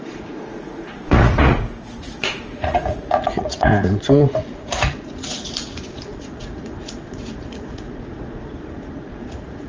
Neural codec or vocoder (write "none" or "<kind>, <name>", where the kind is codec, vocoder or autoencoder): vocoder, Vocos